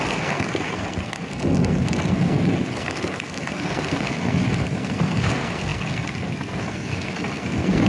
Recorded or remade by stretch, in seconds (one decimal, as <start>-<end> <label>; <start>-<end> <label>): 0.0-7.9 remade